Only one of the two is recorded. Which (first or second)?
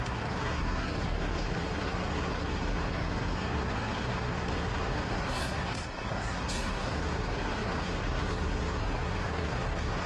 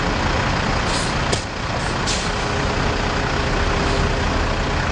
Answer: second